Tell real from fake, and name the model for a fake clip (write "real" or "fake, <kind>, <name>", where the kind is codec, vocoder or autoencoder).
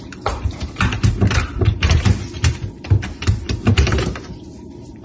fake, vocoder, BigVGAN v2